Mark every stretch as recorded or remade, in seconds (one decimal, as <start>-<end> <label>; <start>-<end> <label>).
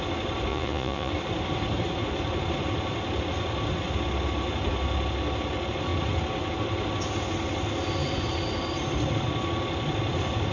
0.0-0.5 recorded; 0.5-1.1 remade; 1.1-10.5 recorded